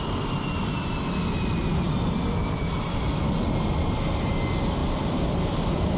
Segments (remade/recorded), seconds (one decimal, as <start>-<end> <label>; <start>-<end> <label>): 0.0-1.6 recorded; 1.6-3.4 remade; 3.4-4.8 recorded; 4.8-6.0 remade